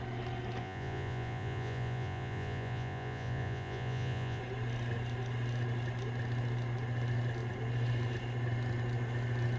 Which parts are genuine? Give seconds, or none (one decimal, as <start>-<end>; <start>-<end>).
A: 0.0-0.6; 4.4-9.6